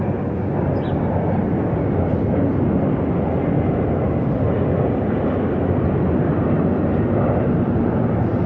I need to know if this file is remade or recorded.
recorded